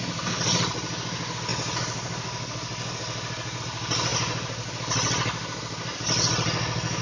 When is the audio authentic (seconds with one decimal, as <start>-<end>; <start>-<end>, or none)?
0.0-7.0